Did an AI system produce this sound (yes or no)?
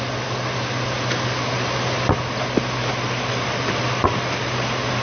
no